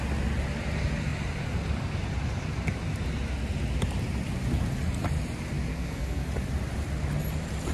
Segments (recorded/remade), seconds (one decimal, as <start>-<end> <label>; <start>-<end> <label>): 0.0-5.7 recorded; 5.7-6.3 remade; 6.3-7.7 recorded